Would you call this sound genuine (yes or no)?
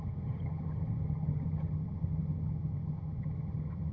no